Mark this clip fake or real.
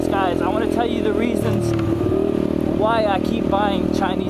real